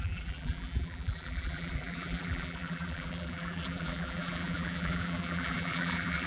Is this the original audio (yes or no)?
no